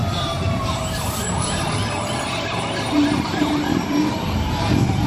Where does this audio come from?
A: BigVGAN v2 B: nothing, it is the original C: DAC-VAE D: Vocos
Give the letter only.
A